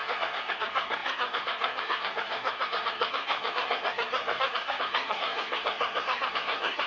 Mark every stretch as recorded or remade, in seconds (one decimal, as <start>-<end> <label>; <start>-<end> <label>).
0.0-6.9 remade